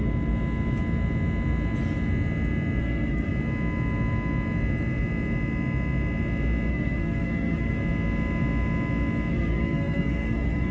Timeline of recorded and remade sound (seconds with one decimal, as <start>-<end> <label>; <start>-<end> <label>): 0.0-2.8 recorded; 2.8-3.3 remade; 3.3-6.7 recorded; 6.7-7.8 remade; 7.8-9.3 recorded; 9.3-10.7 remade